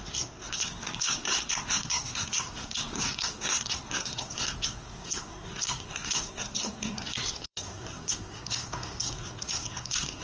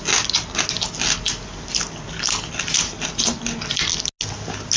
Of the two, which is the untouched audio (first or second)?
second